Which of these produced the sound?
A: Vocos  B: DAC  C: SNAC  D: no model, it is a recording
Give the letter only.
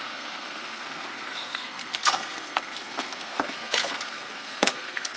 C